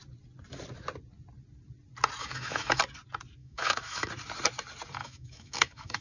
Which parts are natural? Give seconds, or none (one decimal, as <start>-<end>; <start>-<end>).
0.0-2.2; 2.8-3.4; 4.1-5.0